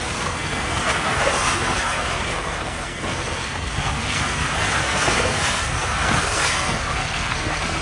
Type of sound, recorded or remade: remade